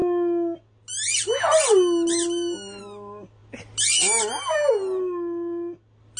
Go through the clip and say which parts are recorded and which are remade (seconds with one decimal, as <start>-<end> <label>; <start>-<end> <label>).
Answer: 0.0-6.2 recorded